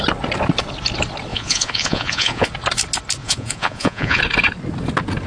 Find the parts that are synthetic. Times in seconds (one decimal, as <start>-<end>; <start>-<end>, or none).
1.3-2.5; 3.2-4.2